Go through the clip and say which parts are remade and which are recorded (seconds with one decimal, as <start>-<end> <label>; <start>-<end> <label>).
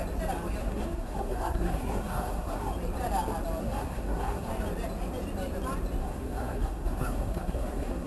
0.0-0.6 recorded; 0.6-2.7 remade; 2.7-3.6 recorded; 3.6-4.5 remade; 4.5-6.0 recorded; 6.0-8.1 remade